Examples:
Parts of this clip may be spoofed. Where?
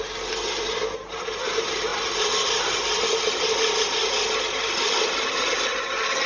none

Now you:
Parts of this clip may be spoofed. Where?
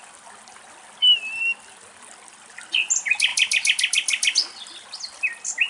none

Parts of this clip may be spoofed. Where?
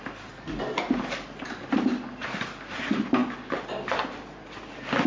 none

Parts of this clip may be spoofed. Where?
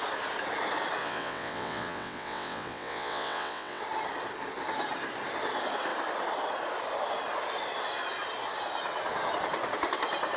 1.0-3.8 (vocoder, WaveNeXt)